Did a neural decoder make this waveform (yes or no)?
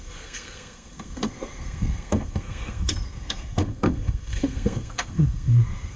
yes